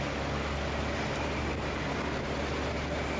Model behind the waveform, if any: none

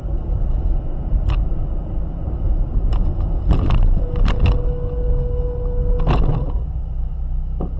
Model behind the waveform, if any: none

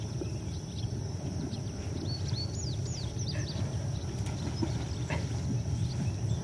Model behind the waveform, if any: vocoder, BigVGAN v2